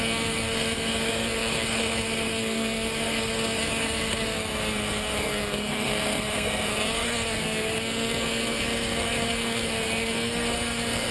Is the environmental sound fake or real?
fake